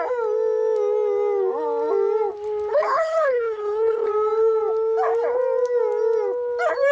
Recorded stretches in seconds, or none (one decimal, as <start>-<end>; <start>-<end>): 0.0-2.7; 4.1-6.9